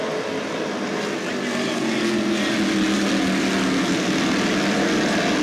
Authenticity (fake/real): real